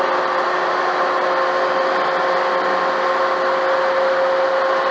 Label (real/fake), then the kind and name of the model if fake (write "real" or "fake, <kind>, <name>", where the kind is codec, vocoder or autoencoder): real